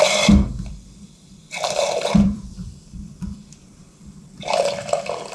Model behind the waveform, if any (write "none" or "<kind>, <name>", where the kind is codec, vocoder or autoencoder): vocoder, BigVGAN v2